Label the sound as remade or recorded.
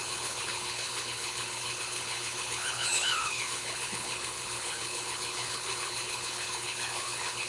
remade